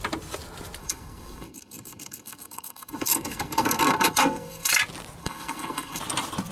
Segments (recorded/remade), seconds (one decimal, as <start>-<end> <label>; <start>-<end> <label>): 0.0-0.8 recorded; 0.8-4.7 remade; 4.7-5.2 recorded; 5.2-6.0 remade; 6.0-6.5 recorded